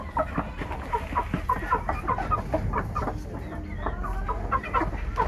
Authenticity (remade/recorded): recorded